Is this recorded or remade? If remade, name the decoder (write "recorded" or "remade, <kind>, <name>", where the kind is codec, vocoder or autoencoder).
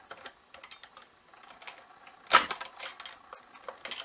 recorded